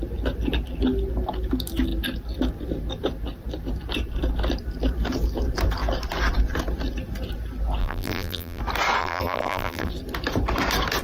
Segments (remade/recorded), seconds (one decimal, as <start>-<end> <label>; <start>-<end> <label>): 0.0-7.8 recorded; 7.8-8.6 remade; 8.6-9.0 recorded; 9.0-9.9 remade; 9.9-11.0 recorded